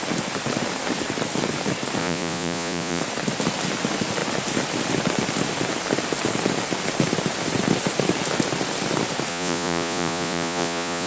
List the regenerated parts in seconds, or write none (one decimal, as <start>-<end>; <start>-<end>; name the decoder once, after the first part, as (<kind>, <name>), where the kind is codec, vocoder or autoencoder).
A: 2.0-3.0 (vocoder, Vocos); 9.3-11.1

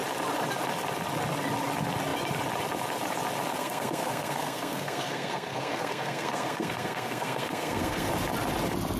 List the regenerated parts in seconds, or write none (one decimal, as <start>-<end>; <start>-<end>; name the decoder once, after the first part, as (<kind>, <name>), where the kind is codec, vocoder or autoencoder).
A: 3.5-8.1 (codec, SNAC)

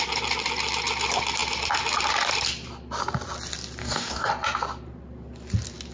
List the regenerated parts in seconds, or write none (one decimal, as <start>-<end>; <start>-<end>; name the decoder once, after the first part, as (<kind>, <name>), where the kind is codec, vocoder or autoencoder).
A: 3.8-4.3 (codec, DAC)

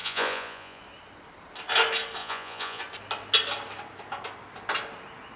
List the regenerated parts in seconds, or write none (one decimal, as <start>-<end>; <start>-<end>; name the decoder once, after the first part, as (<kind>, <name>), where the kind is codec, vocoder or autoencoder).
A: 0.0-0.8 (vocoder, Vocos); 2.2-2.8

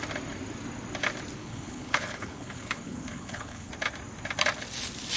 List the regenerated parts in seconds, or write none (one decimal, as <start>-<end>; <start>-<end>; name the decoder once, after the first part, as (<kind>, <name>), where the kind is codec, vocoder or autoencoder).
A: 1.4-3.7 (codec, HILCodec)

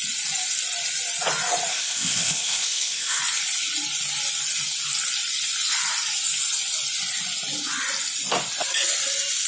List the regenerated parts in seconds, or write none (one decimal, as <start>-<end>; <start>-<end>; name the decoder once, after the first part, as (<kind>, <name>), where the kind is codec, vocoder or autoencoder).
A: 1.7-3.2 (codec, ZipCodec)

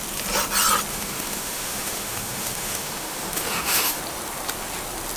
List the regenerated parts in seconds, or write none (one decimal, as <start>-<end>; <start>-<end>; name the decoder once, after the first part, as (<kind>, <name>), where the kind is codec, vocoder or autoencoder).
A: 0.9-4.0 (autoencoder, DAC-VAE)

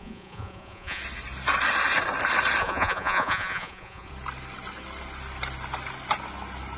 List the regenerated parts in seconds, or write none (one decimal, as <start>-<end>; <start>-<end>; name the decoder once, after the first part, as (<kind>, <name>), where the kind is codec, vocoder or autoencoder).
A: 0.0-1.0 (vocoder, Vocos); 2.6-4.1